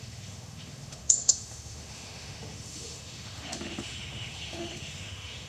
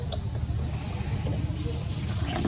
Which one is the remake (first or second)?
first